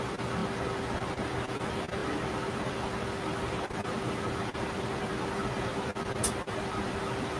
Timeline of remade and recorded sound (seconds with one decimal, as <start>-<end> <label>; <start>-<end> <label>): 0.0-0.4 remade; 0.4-1.2 recorded; 1.2-7.4 remade